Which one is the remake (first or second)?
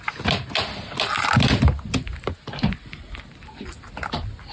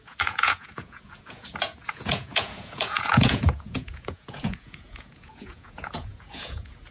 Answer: second